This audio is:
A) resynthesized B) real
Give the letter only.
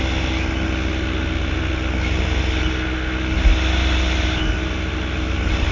B